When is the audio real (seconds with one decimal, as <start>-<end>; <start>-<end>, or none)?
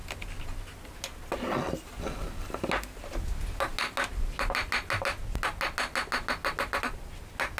0.0-7.6